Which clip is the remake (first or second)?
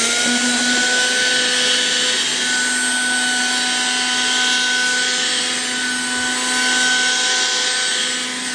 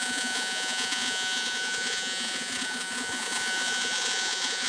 second